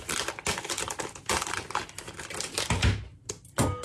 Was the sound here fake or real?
real